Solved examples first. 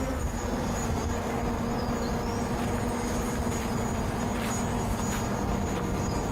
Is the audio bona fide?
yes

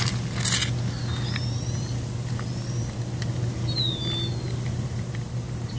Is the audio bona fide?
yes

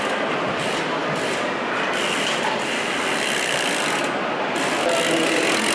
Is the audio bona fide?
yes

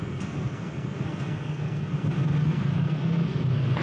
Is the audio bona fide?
no